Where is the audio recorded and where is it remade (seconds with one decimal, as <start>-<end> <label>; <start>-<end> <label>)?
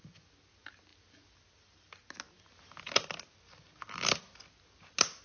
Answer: 0.0-5.2 recorded